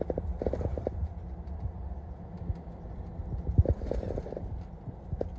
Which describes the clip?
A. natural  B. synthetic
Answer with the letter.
B